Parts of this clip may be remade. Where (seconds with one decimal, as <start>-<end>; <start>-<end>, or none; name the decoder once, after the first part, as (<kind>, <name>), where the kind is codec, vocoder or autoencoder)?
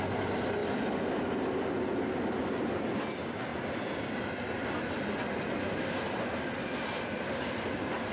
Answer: none